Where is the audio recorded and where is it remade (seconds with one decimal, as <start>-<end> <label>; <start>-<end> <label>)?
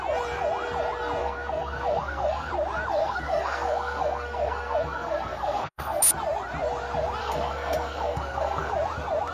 0.0-1.2 recorded; 1.2-2.5 remade; 2.5-3.0 recorded; 3.0-6.0 remade; 6.0-7.2 recorded; 7.2-8.7 remade; 8.7-9.3 recorded